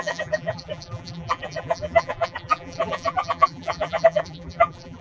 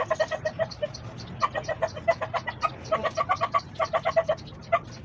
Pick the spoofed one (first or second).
first